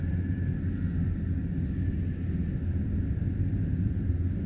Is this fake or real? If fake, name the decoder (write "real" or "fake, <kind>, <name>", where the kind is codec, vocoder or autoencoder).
real